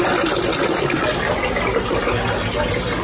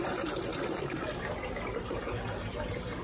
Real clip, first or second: first